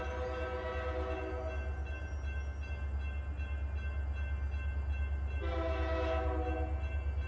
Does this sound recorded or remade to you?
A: recorded